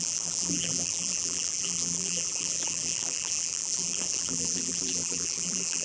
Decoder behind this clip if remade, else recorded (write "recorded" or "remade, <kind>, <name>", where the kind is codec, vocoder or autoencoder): remade, vocoder, BigVGAN v2